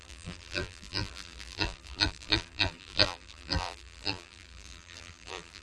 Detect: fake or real fake